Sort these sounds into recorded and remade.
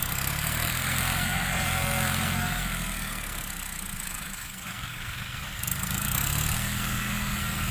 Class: remade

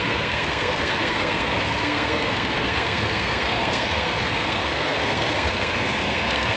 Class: remade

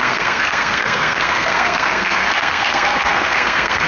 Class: remade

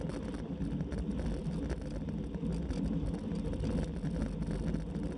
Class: recorded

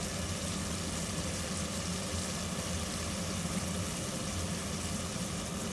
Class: recorded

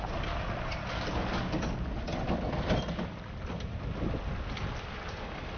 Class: recorded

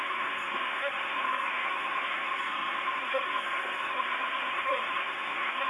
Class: remade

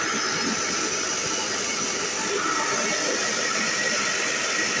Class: recorded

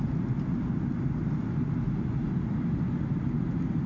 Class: recorded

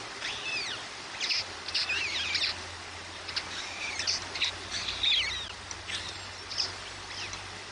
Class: recorded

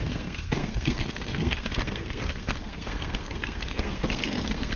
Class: remade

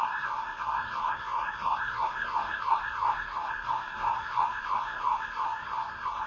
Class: remade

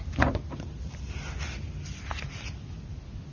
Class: recorded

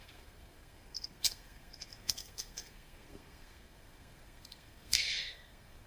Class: remade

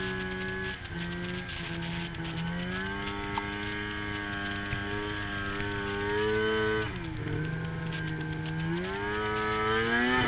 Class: recorded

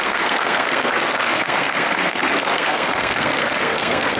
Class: remade